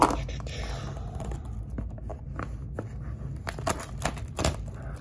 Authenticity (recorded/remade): recorded